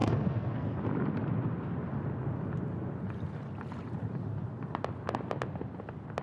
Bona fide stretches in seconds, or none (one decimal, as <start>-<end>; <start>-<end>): 0.8-6.2